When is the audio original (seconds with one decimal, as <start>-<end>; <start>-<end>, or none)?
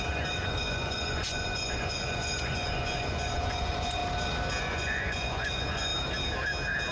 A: 4.0-4.6; 5.9-6.9